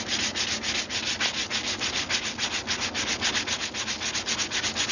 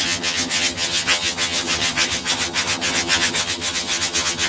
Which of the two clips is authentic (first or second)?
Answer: first